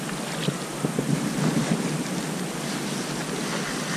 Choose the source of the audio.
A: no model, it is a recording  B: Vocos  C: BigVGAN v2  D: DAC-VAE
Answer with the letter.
A